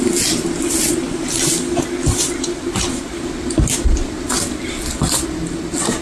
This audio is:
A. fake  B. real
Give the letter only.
B